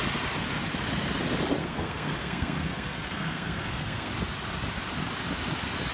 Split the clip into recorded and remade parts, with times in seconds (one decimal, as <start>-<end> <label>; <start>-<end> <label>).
0.0-1.6 recorded; 1.6-4.1 remade; 4.1-5.9 recorded